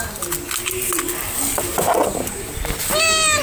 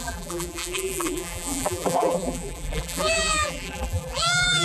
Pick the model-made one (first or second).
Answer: second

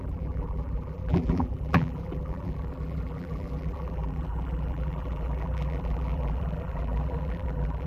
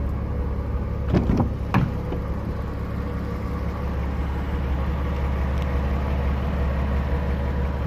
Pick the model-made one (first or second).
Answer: first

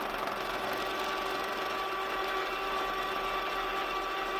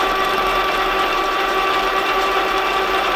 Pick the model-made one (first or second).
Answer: second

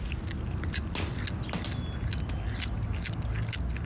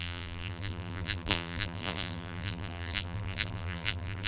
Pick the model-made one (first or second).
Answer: second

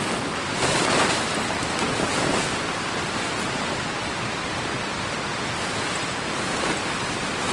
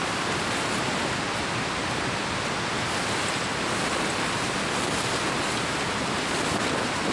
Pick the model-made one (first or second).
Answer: first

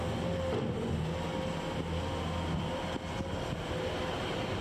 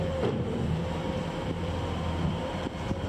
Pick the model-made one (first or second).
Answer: second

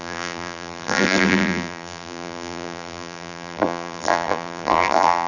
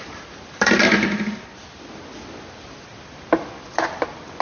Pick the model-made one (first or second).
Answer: first